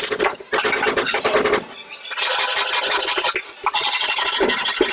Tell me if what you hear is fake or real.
real